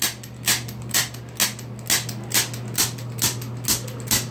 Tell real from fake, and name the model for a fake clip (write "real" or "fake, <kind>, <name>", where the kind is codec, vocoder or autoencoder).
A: real